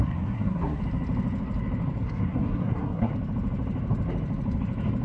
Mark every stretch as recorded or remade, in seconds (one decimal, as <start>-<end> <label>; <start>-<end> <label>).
0.0-0.8 remade; 0.8-2.0 recorded; 2.0-3.1 remade; 3.1-5.0 recorded